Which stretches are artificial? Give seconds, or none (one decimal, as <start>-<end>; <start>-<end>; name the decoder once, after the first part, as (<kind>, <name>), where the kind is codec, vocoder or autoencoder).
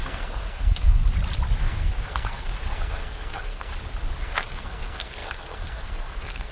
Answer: 0.0-1.0 (codec, SNAC); 1.6-3.7; 4.2-6.5